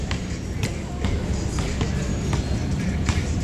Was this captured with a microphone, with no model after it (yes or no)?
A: no